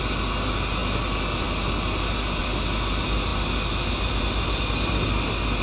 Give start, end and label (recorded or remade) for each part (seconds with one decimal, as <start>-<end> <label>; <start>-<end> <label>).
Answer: 0.0-5.6 recorded